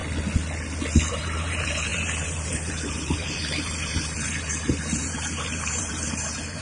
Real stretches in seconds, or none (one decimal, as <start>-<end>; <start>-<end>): 0.0-1.1

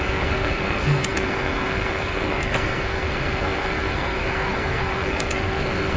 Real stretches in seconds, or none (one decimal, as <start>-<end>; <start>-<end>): none

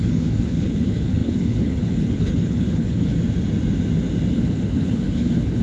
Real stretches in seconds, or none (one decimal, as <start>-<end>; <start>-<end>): 3.1-4.3